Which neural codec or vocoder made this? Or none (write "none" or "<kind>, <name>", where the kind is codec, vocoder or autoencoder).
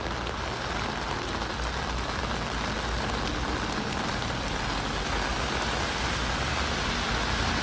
none